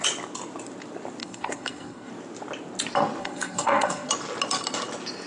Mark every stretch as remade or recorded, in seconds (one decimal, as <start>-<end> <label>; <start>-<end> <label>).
0.0-1.2 recorded; 1.2-2.1 remade; 2.1-3.2 recorded; 3.2-4.1 remade; 4.1-5.3 recorded